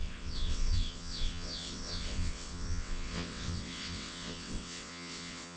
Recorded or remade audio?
remade